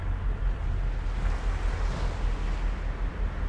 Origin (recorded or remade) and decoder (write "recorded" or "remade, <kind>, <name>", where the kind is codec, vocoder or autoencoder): recorded